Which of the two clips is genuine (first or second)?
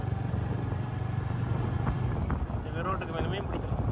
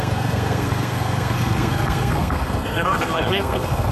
first